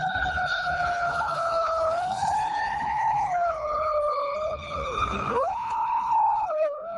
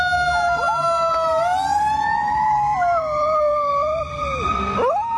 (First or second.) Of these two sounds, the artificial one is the first